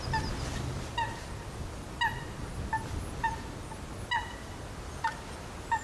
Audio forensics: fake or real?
real